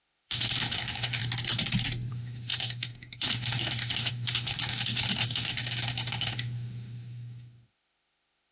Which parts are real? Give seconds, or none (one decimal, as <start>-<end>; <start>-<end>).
1.2-2.1